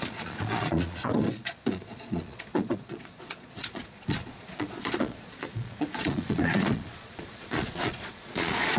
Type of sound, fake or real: fake